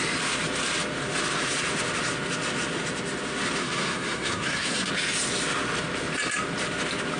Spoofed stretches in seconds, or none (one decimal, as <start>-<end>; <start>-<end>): 3.6-4.9